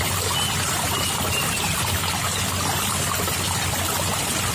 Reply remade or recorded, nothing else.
recorded